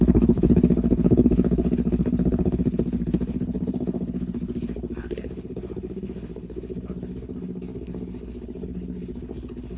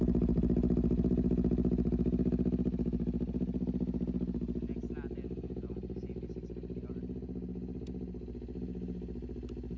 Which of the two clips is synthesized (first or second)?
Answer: first